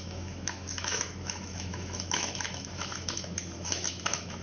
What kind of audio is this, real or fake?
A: fake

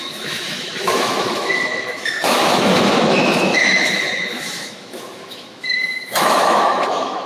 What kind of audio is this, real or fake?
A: fake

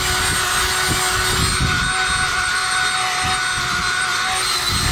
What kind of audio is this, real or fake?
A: real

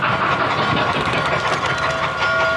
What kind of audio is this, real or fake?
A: real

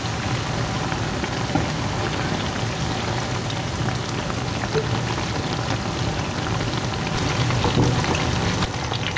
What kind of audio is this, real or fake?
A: real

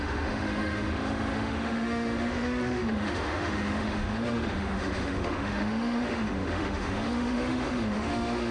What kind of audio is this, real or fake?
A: fake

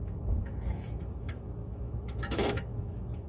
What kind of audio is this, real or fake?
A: fake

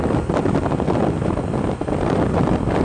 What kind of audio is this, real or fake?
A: real